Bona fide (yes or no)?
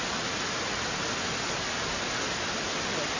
yes